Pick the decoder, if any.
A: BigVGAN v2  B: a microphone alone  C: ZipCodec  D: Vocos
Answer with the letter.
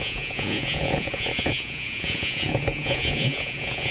D